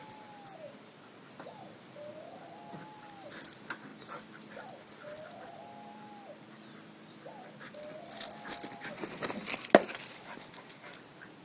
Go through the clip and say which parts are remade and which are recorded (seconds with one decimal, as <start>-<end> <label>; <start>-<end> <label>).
0.0-11.4 recorded